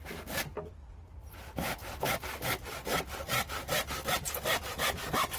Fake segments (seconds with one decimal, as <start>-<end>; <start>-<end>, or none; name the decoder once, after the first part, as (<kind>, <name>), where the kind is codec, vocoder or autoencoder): 1.8-2.4 (vocoder, BigVGAN v2)